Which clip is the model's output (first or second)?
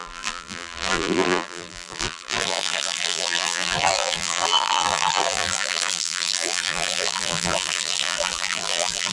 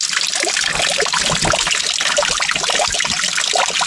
first